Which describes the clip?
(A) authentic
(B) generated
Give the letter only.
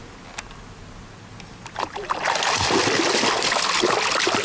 A